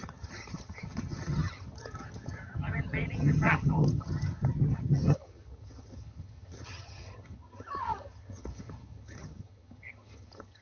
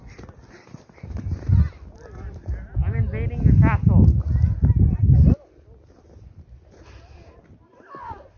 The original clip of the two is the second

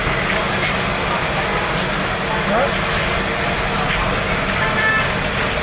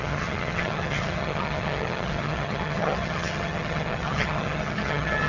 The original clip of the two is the first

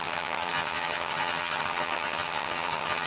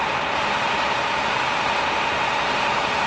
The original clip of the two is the second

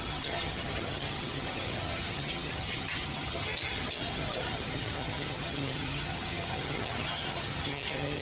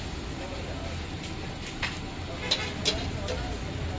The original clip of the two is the second